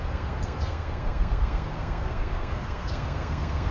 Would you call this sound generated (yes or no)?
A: yes